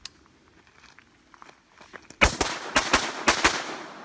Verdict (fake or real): real